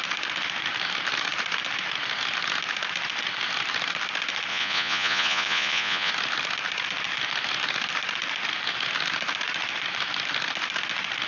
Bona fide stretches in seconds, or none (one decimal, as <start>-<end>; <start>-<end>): 0.0-4.5; 6.1-11.3